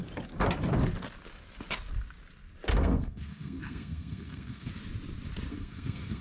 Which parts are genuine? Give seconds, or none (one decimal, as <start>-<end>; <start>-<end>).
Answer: 0.0-2.7; 4.7-5.5